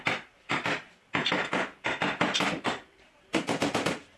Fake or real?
fake